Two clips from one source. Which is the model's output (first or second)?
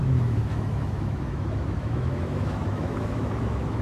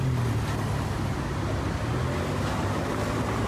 first